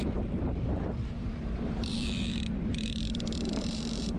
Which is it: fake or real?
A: fake